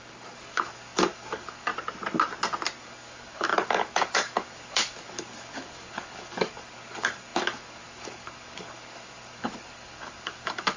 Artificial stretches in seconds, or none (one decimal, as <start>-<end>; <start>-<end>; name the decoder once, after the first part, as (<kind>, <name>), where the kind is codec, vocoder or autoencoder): 0.0-1.7 (codec, DAC); 2.8-10.8